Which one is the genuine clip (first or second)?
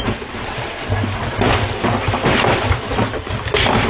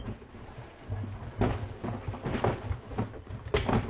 second